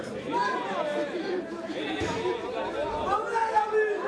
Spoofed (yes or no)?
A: yes